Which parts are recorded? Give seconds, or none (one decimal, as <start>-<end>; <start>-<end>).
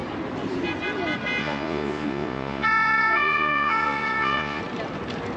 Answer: 0.0-1.4; 4.6-5.4